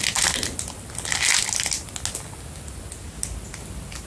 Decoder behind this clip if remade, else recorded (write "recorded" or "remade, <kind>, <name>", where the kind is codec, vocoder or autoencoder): recorded